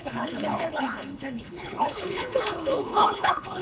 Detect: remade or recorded remade